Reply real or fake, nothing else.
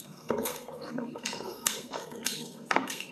fake